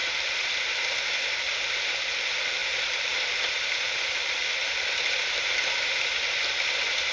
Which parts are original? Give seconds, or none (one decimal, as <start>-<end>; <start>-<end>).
1.5-2.6; 5.7-7.1